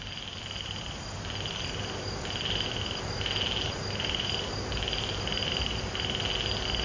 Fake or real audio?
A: real